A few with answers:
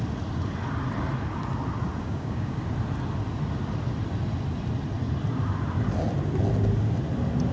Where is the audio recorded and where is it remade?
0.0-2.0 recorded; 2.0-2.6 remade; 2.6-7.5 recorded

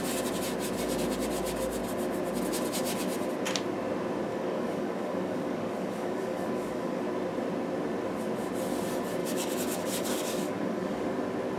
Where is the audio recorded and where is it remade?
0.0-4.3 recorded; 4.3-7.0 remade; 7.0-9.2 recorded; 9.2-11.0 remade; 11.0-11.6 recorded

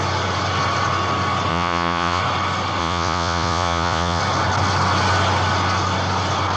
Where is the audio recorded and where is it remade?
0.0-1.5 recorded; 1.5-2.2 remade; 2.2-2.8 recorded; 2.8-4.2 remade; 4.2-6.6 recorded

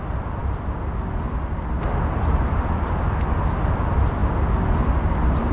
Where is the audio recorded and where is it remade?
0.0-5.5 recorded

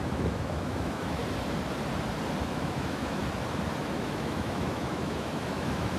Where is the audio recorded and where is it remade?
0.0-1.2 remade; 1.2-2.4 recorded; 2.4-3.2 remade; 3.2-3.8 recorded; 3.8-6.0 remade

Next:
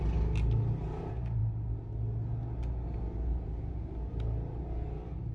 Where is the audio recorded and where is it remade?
0.0-5.3 recorded

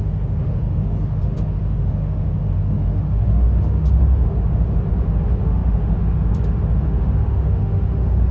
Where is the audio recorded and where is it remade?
0.0-8.3 remade